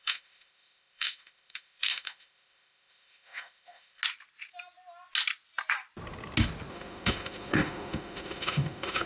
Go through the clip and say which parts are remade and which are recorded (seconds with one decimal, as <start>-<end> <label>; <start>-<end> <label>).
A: 0.0-4.0 remade; 4.0-6.7 recorded; 6.7-9.1 remade